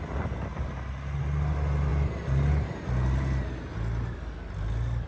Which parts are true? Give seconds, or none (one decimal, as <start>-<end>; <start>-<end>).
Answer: 0.0-5.1